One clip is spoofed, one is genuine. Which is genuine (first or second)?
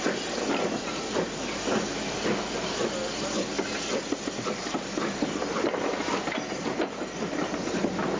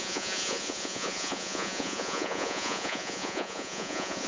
first